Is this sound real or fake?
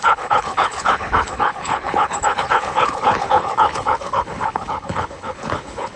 fake